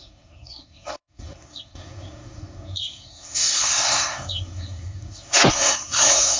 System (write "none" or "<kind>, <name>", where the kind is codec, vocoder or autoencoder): codec, SNAC